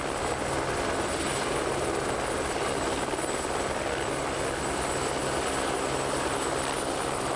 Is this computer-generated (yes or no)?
no